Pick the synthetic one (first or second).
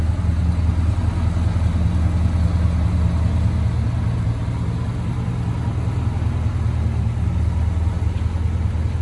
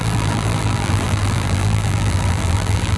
second